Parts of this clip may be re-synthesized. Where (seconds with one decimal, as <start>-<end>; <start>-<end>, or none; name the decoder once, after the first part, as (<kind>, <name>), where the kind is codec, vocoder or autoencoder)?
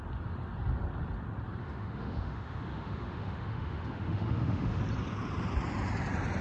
1.6-4.8 (autoencoder, DAC-VAE)